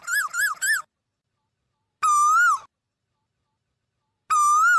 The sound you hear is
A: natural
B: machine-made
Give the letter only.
A